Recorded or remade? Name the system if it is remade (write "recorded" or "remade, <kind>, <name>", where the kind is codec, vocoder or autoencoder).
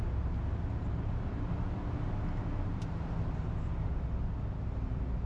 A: recorded